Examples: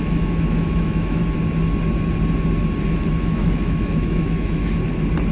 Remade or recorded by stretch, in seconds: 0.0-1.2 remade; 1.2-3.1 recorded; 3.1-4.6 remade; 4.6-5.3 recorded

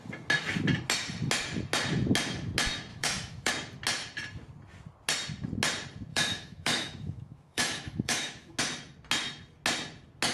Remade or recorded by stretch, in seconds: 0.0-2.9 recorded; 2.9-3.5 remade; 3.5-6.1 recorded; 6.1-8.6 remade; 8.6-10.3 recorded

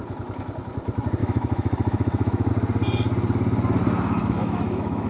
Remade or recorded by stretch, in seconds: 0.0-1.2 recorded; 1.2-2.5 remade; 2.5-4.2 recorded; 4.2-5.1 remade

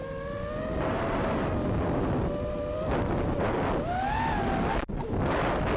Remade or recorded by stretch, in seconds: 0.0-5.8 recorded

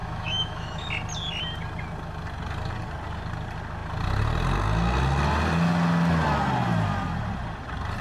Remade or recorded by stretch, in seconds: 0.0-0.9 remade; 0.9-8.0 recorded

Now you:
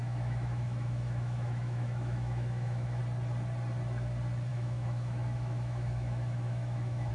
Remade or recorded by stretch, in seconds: 0.0-3.0 remade; 3.0-4.5 recorded; 4.5-7.1 remade